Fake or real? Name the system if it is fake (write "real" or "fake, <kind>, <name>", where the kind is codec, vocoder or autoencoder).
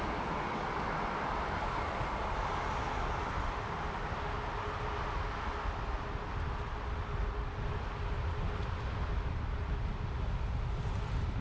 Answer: real